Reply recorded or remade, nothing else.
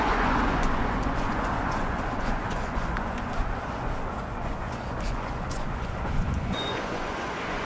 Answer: remade